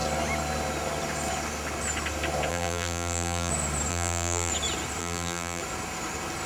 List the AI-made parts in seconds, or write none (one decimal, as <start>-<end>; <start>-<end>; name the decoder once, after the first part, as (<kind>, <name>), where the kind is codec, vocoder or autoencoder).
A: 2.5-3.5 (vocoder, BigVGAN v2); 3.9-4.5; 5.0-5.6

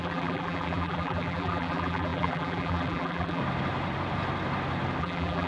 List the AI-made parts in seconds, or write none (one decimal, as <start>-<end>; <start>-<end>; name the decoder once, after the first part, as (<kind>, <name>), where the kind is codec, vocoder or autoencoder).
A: 0.0-3.4 (vocoder, BigVGAN v2); 5.0-5.5

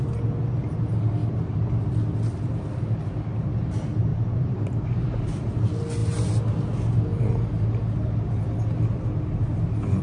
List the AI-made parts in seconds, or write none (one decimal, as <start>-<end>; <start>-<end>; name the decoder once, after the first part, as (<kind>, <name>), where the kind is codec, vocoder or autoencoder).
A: 4.1-5.6 (vocoder, BigVGAN v2)

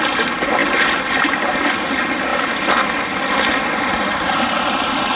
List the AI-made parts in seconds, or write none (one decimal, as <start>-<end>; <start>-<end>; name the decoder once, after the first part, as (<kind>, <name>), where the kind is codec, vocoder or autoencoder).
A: none

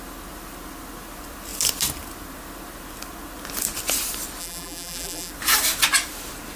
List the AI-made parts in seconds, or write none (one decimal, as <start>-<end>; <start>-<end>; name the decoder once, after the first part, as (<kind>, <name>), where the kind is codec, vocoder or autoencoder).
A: 4.4-5.3 (vocoder, BigVGAN v2)

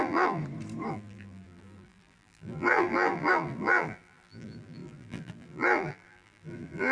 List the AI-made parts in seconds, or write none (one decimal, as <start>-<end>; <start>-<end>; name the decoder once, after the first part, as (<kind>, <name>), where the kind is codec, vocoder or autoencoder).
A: 0.0-0.4 (vocoder, BigVGAN v2); 0.9-6.9

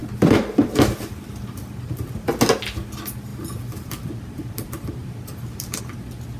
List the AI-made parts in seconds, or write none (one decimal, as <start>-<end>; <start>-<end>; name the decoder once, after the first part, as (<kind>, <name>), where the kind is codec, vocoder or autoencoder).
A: 0.0-0.6 (vocoder, BigVGAN v2); 3.3-5.8

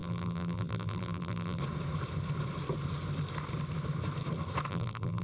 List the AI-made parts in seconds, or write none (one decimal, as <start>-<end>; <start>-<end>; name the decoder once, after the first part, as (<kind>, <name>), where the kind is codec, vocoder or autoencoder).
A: 0.0-1.6 (vocoder, BigVGAN v2); 4.7-5.2